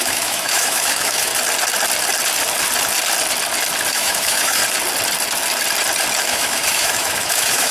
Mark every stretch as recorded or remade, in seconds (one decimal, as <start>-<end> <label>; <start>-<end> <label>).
0.0-1.3 remade; 1.3-3.9 recorded; 3.9-4.6 remade; 4.6-6.2 recorded; 6.2-7.7 remade